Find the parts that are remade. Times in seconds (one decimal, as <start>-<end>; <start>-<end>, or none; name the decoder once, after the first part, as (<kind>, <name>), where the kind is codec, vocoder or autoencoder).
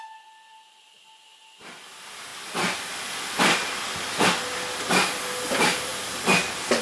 none